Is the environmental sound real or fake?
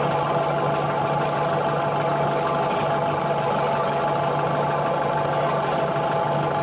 real